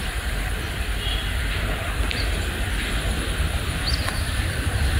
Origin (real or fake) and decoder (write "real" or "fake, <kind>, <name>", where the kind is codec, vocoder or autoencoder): real